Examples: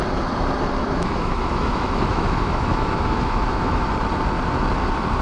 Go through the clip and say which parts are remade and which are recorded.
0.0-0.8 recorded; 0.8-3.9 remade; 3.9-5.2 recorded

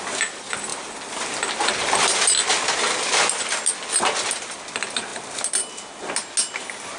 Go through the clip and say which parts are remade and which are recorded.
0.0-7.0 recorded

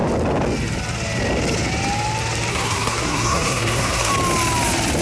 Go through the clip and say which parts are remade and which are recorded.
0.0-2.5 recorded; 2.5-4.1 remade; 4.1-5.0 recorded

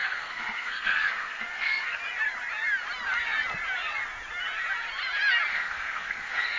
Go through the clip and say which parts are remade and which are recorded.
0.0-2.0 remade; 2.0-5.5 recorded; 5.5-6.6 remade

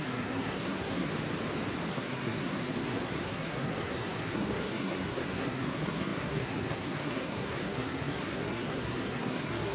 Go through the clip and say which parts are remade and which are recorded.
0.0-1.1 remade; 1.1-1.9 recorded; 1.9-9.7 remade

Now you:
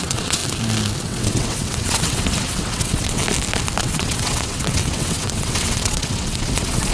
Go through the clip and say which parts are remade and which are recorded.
0.0-0.4 remade; 0.4-1.0 recorded; 1.0-3.2 remade; 3.2-3.8 recorded; 3.8-6.9 remade